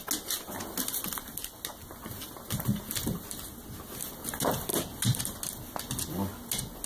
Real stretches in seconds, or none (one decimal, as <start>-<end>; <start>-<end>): 0.0-6.9